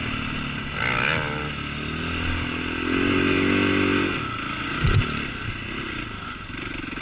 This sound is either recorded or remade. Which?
recorded